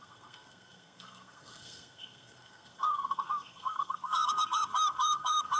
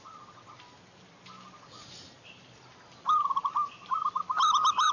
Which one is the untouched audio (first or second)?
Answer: second